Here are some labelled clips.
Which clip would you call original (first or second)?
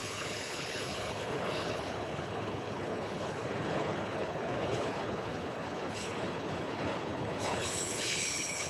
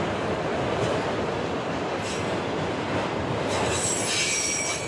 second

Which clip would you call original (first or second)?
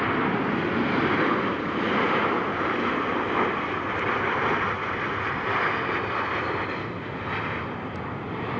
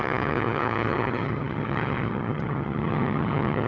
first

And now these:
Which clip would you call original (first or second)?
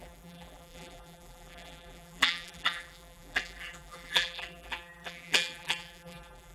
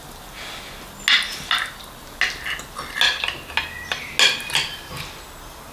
second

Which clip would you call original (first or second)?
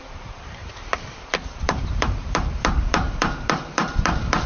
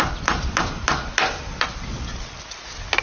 second